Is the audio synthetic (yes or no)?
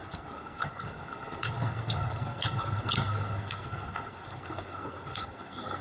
yes